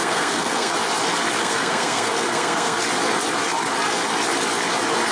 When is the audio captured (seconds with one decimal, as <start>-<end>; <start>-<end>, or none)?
0.7-1.4; 2.8-5.1